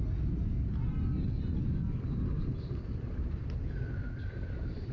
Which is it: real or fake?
real